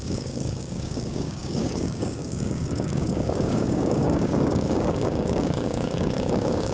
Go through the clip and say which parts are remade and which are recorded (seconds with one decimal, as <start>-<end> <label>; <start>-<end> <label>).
0.0-6.7 remade